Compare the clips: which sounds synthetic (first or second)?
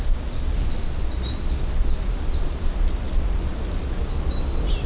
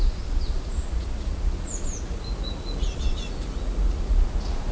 second